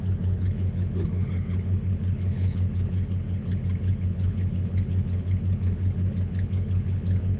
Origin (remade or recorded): remade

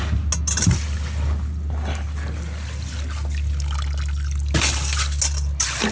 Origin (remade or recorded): recorded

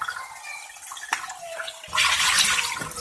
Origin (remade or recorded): recorded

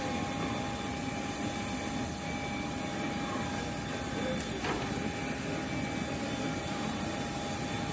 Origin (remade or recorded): recorded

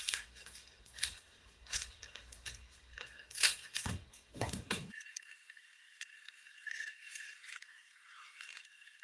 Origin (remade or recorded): remade